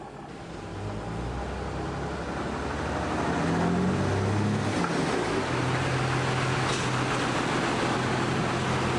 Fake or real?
real